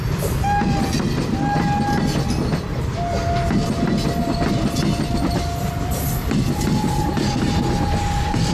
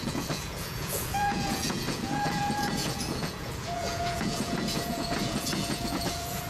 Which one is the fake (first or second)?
second